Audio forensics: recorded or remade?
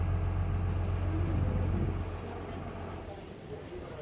recorded